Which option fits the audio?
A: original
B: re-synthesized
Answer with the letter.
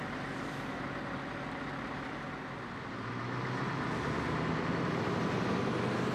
A